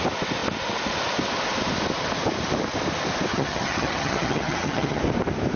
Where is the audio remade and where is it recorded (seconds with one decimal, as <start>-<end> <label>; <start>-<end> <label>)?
0.0-3.3 recorded; 3.3-5.0 remade; 5.0-5.6 recorded